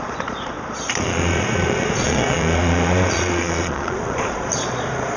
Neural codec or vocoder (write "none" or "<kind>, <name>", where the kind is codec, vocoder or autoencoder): vocoder, Vocos